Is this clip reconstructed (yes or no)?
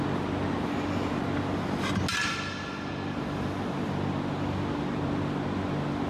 no